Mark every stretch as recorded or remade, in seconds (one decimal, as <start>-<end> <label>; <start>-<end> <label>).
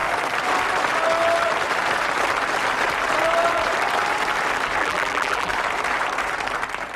0.0-4.8 recorded; 4.8-5.5 remade; 5.5-7.0 recorded